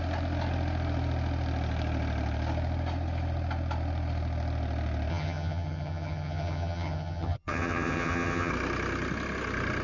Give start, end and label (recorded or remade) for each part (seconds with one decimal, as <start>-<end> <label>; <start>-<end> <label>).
0.0-5.1 recorded; 5.1-8.5 remade; 8.5-9.8 recorded